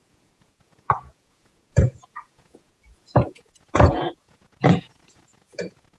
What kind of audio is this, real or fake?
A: fake